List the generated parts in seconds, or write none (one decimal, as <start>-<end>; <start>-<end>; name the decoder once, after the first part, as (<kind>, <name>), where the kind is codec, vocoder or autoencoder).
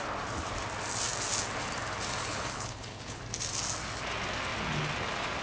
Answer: 2.3-3.2 (codec, HILCodec)